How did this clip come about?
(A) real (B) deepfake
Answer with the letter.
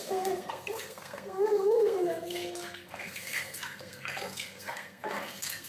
B